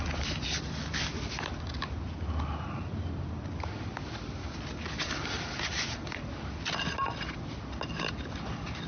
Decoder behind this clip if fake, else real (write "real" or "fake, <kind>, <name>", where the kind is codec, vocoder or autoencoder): real